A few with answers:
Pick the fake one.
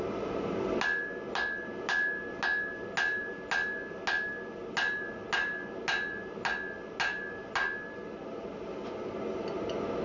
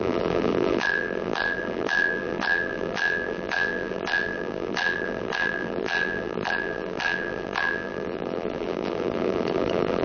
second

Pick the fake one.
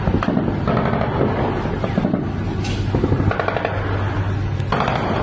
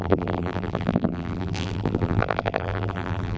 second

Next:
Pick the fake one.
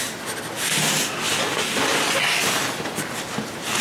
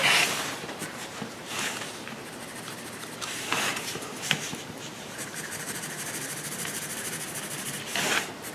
second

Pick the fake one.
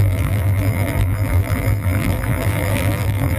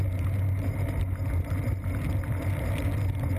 first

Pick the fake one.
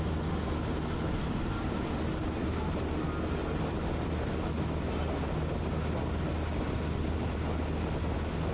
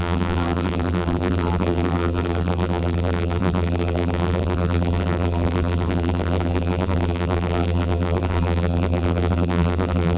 second